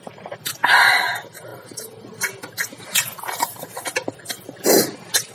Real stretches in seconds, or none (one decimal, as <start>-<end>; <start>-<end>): 0.0-5.3